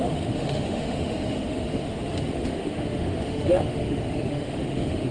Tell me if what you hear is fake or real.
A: fake